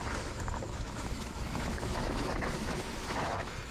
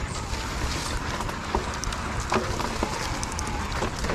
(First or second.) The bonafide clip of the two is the second